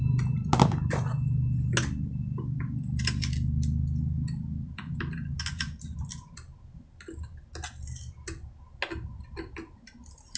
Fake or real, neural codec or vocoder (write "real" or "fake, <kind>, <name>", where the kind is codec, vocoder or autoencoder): real